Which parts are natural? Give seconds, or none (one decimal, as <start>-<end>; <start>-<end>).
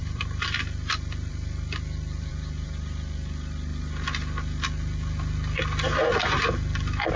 3.7-6.2